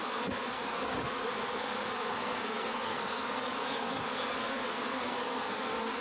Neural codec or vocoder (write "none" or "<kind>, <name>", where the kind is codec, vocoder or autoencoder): codec, SNAC